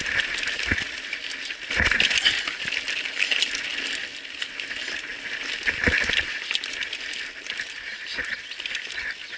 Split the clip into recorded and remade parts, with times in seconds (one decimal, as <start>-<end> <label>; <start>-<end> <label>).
0.0-9.4 recorded